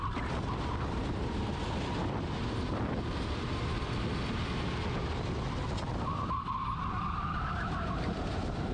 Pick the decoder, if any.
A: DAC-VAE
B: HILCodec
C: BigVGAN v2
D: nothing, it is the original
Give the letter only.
D